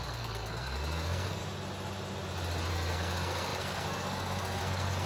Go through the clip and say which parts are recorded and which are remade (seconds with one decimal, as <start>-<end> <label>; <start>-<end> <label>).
0.0-1.4 remade; 1.4-2.7 recorded; 2.7-5.1 remade